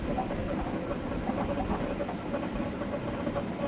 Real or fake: real